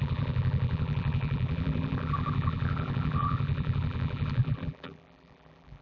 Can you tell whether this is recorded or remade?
remade